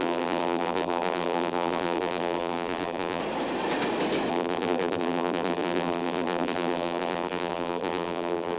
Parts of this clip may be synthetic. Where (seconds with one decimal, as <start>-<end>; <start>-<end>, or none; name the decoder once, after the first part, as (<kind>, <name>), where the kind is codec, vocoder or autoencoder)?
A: 0.0-3.2 (vocoder, BigVGAN v2); 4.3-8.6